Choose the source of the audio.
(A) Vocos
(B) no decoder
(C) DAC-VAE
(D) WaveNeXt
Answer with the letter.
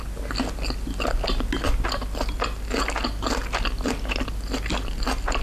B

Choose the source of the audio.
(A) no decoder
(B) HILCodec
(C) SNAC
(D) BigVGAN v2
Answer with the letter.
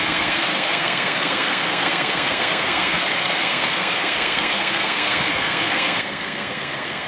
C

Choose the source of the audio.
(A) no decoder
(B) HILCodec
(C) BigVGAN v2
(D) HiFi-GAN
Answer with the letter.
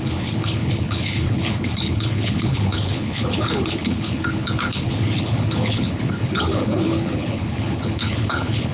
B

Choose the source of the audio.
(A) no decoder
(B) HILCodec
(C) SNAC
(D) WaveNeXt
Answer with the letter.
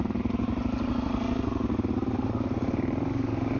A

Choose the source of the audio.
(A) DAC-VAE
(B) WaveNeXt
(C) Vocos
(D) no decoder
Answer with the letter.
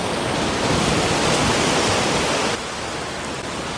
D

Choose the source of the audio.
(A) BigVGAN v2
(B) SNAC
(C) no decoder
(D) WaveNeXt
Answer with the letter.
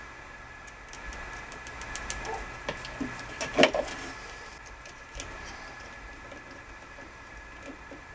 C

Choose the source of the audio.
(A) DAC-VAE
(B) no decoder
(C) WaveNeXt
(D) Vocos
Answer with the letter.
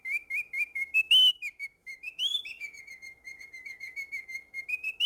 A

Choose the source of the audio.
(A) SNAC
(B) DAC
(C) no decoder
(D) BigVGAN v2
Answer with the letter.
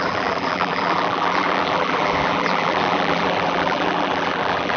D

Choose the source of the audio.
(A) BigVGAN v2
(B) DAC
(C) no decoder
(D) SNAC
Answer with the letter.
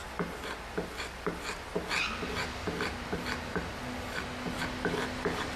C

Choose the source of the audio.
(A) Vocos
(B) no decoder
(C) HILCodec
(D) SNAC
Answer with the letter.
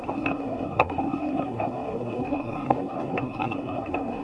D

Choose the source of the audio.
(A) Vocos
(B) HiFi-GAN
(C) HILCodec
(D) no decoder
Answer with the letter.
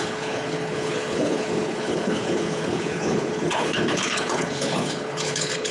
C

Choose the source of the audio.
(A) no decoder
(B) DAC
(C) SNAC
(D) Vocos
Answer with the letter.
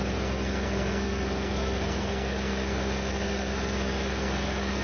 C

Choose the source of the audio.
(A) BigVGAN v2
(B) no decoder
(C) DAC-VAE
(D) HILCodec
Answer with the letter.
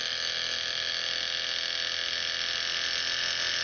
B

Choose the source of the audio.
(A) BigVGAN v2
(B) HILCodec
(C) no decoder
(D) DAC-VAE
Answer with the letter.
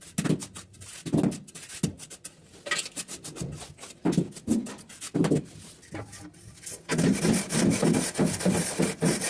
C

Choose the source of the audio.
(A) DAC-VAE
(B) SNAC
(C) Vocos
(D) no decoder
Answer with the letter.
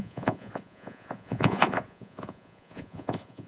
C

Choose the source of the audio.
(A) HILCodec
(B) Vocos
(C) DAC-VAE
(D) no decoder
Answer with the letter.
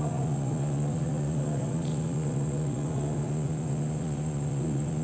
B